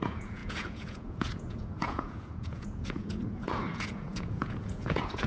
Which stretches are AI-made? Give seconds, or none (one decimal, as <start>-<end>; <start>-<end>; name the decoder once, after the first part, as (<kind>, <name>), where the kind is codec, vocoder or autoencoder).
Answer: 0.0-5.3 (vocoder, Vocos)